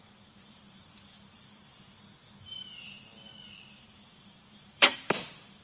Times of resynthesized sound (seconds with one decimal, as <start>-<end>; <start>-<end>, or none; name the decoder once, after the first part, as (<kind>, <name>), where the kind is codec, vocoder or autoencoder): 0.0-1.7 (vocoder, BigVGAN v2); 2.4-2.8; 3.7-5.6